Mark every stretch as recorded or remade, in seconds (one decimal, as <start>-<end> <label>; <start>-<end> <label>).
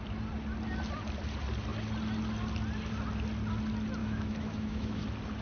0.0-4.0 recorded; 4.0-5.0 remade; 5.0-5.4 recorded